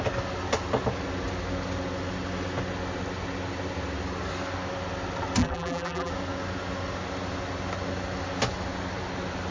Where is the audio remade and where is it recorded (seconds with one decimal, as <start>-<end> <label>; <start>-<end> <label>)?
0.0-5.4 recorded; 5.4-6.1 remade; 6.1-9.5 recorded